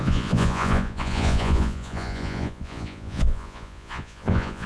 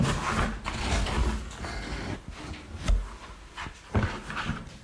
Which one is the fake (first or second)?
first